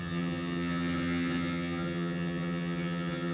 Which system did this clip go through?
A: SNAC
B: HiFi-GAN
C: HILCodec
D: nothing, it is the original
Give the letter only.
B